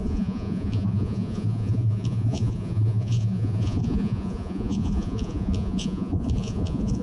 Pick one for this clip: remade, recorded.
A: remade